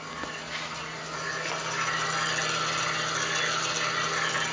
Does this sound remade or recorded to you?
recorded